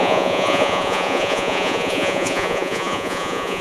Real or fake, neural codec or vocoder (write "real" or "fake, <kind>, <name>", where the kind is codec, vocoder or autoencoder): fake, vocoder, Vocos